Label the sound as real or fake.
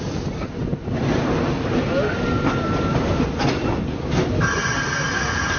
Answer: real